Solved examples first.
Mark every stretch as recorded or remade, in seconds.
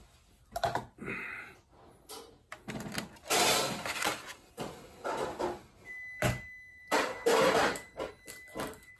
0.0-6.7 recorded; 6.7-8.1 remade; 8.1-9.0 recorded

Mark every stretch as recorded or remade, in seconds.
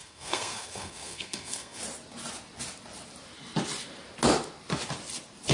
0.0-1.8 remade; 1.8-5.5 recorded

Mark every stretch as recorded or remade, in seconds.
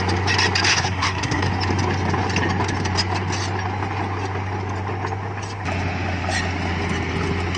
0.0-0.7 recorded; 0.7-1.5 remade; 1.5-7.6 recorded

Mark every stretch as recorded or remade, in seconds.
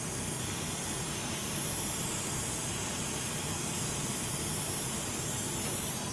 0.0-3.3 recorded; 3.3-3.9 remade; 3.9-6.1 recorded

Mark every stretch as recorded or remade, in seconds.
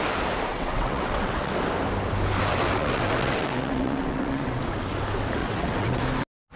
0.0-0.5 recorded; 0.5-1.5 remade; 1.5-2.5 recorded; 2.5-4.6 remade; 4.6-5.4 recorded; 5.4-6.0 remade; 6.0-6.6 recorded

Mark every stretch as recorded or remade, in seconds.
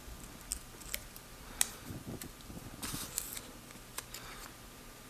0.0-0.5 recorded; 0.5-3.6 remade; 3.6-5.1 recorded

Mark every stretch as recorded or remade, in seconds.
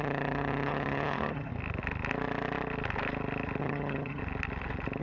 0.0-1.5 remade; 1.5-3.6 recorded; 3.6-4.2 remade; 4.2-5.0 recorded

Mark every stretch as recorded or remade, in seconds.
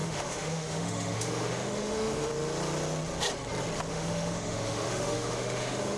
0.0-2.3 remade; 2.3-3.9 recorded; 3.9-6.0 remade